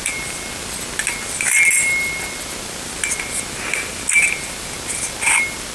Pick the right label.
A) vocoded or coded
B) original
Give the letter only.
B